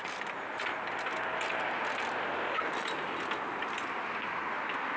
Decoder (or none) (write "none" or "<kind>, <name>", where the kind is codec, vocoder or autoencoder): none